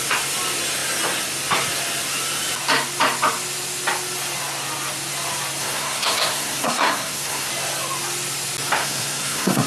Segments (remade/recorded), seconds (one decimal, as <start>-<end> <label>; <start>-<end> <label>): 0.0-5.6 recorded; 5.6-7.5 remade; 7.5-8.8 recorded; 8.8-9.7 remade